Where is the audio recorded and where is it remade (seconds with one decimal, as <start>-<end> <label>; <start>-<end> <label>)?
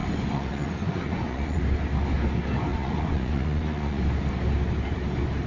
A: 0.0-1.6 remade; 1.6-2.7 recorded; 2.7-4.0 remade; 4.0-5.5 recorded